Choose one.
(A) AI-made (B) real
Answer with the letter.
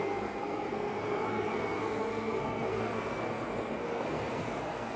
A